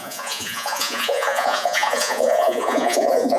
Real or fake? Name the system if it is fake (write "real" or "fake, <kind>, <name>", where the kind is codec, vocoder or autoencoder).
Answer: fake, vocoder, Vocos